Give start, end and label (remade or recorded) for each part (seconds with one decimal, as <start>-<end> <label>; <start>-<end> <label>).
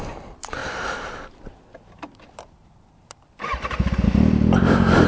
0.0-0.6 recorded; 0.6-1.6 remade; 1.6-2.1 recorded; 2.1-3.7 remade; 3.7-5.1 recorded